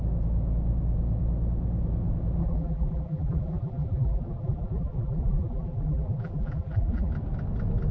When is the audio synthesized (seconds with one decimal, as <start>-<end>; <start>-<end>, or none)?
2.4-7.1

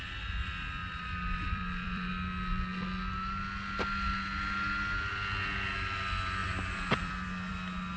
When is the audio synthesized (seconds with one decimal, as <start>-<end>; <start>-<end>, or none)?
0.8-2.1; 6.4-7.5

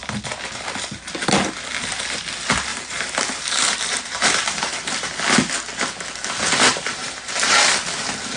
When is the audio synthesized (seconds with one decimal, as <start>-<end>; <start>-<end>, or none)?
2.7-4.8; 6.7-7.3